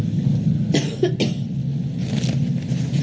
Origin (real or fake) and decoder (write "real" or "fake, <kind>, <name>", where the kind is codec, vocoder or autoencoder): real